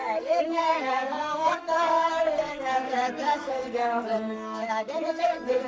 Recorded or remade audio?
remade